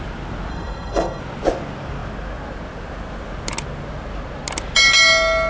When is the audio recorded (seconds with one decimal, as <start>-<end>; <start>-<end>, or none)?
0.0-0.5; 1.2-5.5